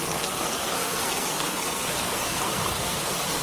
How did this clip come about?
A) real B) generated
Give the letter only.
B